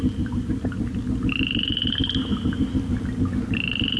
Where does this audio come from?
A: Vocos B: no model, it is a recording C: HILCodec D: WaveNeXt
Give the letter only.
B